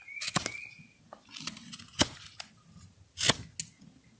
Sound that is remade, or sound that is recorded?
recorded